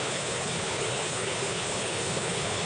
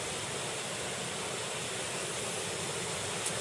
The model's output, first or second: first